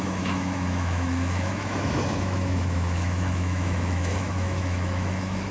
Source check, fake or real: fake